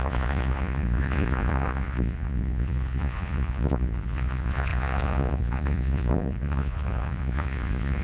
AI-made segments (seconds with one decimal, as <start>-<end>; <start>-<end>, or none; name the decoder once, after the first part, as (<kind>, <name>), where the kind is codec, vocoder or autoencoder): 0.0-8.0 (vocoder, Vocos)